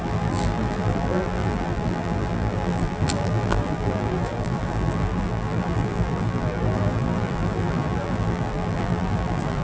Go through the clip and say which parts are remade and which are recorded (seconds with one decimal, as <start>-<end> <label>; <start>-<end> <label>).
0.0-9.6 remade